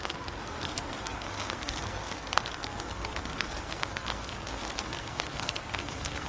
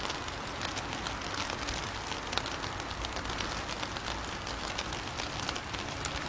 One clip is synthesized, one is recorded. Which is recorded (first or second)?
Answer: second